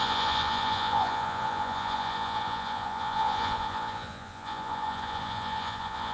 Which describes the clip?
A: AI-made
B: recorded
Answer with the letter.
A